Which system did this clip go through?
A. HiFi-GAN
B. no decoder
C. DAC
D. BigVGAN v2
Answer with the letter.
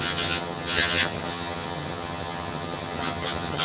A